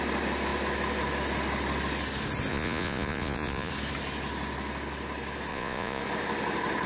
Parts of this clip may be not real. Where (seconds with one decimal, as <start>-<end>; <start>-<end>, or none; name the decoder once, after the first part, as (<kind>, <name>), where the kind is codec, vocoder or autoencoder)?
2.5-3.7 (vocoder, Vocos); 5.5-6.0